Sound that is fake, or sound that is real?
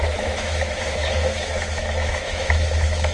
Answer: fake